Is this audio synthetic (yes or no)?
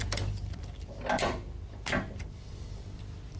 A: no